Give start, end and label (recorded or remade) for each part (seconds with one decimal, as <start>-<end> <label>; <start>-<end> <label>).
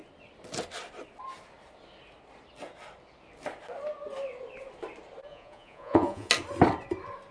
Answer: 0.0-5.3 recorded; 5.3-6.3 remade; 6.3-7.3 recorded